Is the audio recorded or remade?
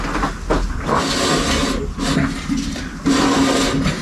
recorded